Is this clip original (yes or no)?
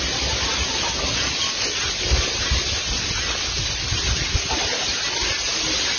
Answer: yes